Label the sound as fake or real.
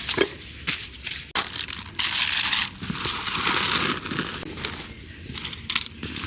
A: real